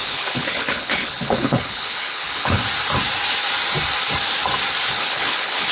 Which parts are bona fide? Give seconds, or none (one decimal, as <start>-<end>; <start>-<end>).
2.6-4.9